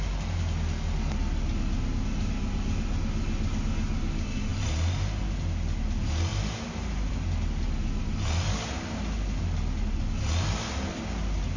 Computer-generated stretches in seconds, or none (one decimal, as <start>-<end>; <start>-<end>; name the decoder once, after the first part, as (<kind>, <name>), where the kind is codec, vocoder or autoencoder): 6.3-7.1 (vocoder, BigVGAN v2)